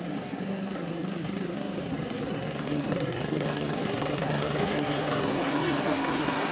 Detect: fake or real fake